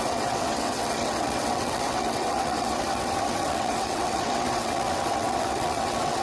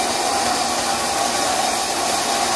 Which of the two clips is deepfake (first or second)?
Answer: first